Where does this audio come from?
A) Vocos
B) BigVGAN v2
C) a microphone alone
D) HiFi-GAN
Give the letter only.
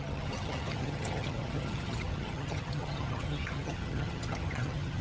D